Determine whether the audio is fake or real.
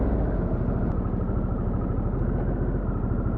real